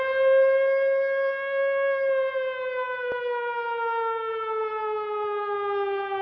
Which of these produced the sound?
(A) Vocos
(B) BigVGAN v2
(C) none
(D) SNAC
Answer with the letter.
C